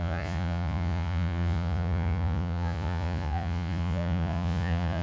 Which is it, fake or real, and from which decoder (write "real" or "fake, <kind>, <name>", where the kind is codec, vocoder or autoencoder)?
fake, vocoder, Vocos